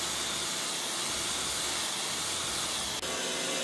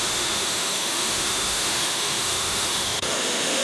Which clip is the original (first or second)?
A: first